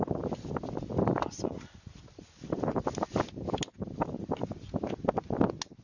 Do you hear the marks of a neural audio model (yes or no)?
no